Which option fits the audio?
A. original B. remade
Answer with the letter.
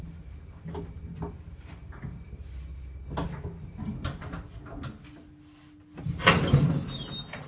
A